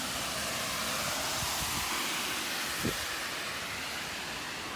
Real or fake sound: real